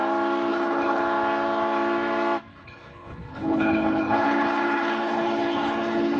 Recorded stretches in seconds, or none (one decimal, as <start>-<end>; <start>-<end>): 0.0-0.5; 1.0-2.5